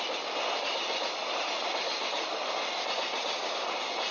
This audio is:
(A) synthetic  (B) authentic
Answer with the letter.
B